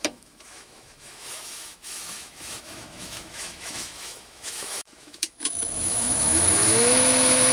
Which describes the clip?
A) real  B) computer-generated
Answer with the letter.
B